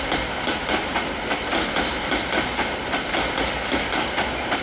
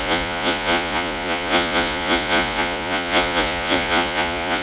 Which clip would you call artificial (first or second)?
second